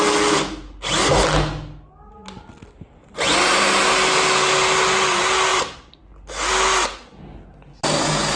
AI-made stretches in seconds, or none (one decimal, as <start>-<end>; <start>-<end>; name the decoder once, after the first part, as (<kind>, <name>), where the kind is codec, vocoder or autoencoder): none